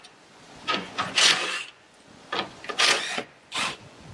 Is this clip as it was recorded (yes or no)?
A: no